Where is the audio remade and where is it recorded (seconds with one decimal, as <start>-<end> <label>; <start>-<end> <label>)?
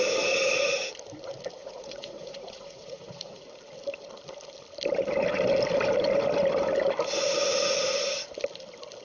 0.0-1.6 recorded; 1.6-3.5 remade; 3.5-9.0 recorded